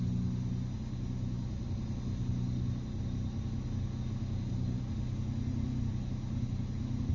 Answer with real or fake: real